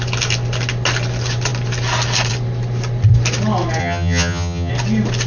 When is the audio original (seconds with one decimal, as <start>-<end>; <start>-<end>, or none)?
0.0-3.8; 4.7-5.3